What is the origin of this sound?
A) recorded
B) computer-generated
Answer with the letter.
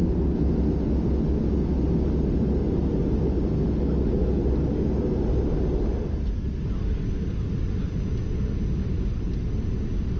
A